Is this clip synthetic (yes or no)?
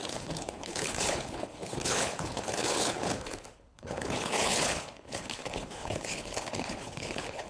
yes